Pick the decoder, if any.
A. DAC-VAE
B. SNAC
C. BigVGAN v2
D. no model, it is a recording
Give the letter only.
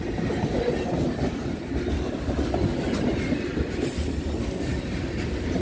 D